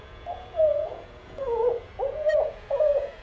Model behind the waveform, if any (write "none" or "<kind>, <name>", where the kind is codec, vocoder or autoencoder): vocoder, Vocos